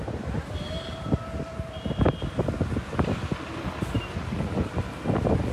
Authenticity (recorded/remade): recorded